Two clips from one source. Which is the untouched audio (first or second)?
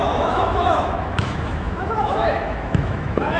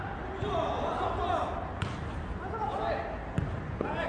second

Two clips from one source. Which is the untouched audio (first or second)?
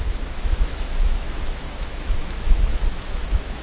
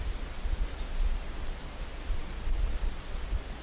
second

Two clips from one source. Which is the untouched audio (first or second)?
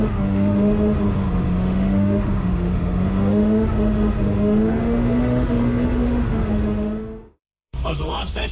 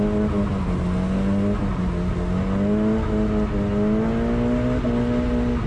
second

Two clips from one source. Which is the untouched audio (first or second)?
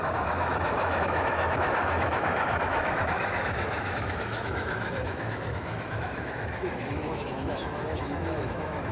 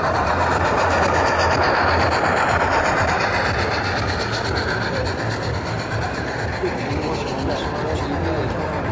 second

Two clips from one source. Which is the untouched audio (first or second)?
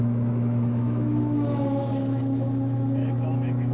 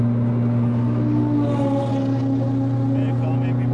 second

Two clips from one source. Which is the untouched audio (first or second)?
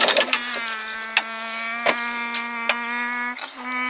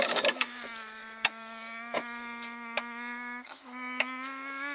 first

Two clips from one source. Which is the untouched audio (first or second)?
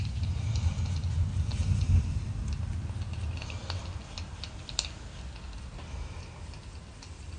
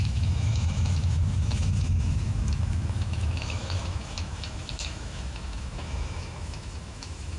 first